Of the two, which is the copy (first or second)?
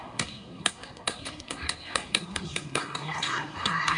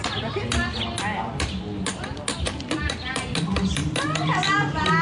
first